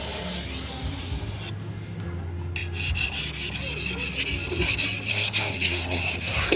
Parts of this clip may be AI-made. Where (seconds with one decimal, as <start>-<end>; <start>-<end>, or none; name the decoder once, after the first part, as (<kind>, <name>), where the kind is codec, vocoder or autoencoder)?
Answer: 5.1-6.6 (codec, SNAC)